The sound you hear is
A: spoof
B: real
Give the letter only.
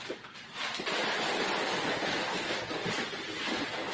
B